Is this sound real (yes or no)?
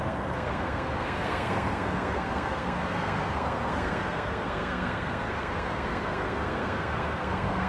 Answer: no